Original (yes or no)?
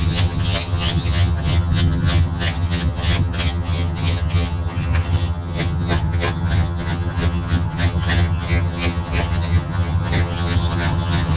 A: no